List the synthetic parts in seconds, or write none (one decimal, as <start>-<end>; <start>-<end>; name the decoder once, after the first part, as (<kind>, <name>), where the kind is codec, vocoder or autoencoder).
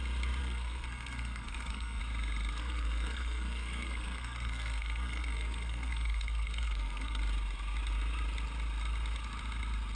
0.4-2.0 (codec, SNAC); 2.6-7.2